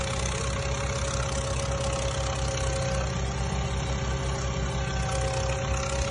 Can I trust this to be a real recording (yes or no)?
yes